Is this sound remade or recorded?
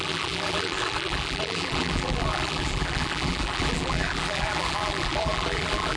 remade